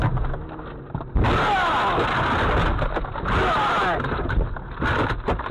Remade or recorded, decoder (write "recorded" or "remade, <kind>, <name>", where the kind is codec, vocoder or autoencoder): recorded